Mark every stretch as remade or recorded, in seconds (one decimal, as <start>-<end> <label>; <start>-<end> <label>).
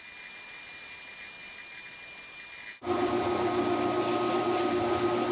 0.0-5.3 recorded